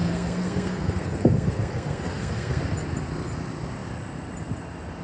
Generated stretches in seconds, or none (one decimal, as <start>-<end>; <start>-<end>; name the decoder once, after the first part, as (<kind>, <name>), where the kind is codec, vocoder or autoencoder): 0.0-2.6 (codec, SNAC)